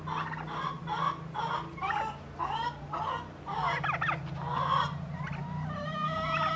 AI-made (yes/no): no